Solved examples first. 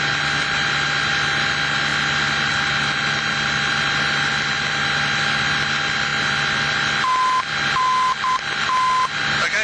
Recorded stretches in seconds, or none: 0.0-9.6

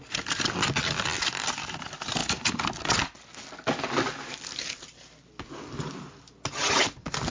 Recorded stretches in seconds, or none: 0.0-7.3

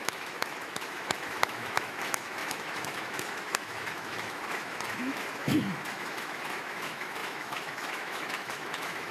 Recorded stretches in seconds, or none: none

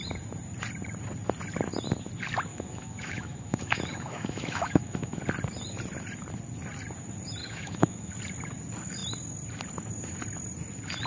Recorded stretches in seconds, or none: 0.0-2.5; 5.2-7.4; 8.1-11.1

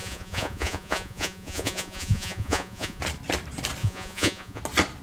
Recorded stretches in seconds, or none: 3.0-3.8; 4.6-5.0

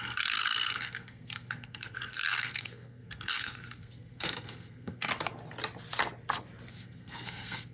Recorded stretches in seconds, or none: 5.1-6.7

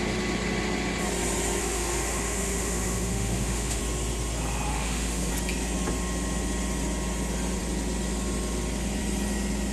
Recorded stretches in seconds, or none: 0.0-1.6; 3.8-4.7; 5.3-9.7

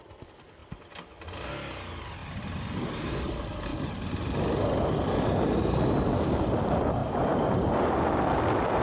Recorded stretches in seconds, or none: 0.0-7.0; 7.9-8.8